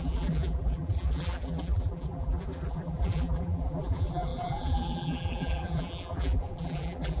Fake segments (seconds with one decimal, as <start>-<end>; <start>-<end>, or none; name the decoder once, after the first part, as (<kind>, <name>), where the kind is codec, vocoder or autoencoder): 0.0-7.2 (vocoder, BigVGAN v2)